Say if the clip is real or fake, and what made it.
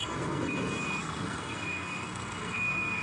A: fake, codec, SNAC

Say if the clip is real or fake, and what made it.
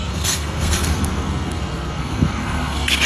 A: fake, codec, SNAC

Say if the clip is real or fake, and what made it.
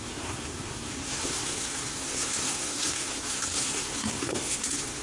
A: fake, codec, SNAC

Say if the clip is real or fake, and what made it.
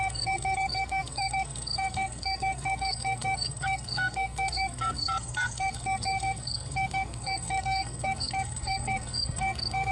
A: fake, codec, SNAC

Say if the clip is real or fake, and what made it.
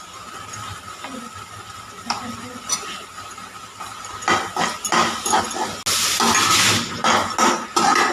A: real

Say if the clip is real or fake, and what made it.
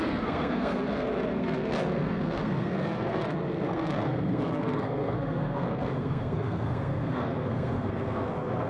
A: fake, codec, SNAC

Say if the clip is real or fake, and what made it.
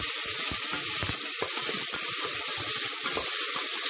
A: real